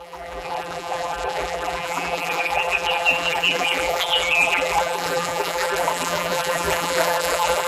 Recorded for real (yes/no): no